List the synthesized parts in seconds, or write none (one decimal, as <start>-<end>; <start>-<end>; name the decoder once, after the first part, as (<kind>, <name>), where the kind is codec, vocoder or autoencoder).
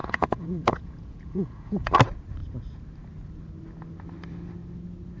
0.0-1.9 (vocoder, Vocos)